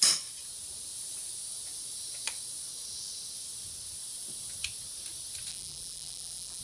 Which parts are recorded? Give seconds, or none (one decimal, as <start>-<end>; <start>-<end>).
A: 0.0-5.5